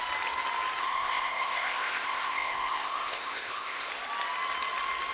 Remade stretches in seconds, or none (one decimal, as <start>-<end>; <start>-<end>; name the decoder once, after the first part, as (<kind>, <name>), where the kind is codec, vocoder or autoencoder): 0.8-3.9 (codec, ZipCodec)